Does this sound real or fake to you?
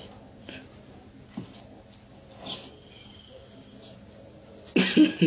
real